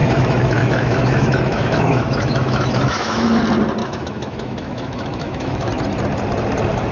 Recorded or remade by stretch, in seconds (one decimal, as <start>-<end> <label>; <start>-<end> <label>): 0.0-3.4 remade; 3.4-3.8 recorded; 3.8-5.7 remade; 5.7-6.9 recorded